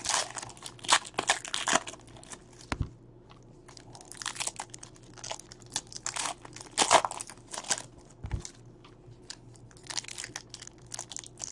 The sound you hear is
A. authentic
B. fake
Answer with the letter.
A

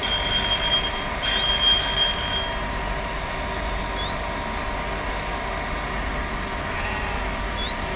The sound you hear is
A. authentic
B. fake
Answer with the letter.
A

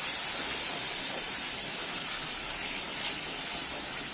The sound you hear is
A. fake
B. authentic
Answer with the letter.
A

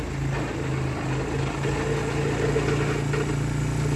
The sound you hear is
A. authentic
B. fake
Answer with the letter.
A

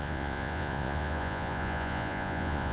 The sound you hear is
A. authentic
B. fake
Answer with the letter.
B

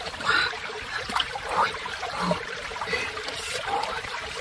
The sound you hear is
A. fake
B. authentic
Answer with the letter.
A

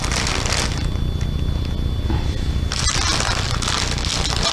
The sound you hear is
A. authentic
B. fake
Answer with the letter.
A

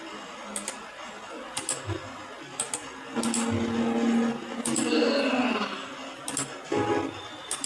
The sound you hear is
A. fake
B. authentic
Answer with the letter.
B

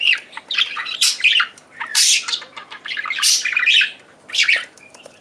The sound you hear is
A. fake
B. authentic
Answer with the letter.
A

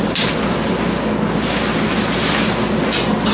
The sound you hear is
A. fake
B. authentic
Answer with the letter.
B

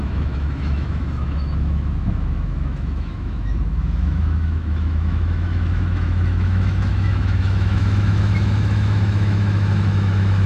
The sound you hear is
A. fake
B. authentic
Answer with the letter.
A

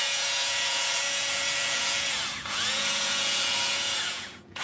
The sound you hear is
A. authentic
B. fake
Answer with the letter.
B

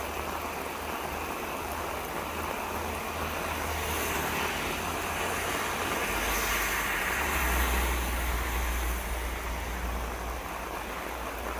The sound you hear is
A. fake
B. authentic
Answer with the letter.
B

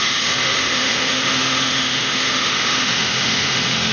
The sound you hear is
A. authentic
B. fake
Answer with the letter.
B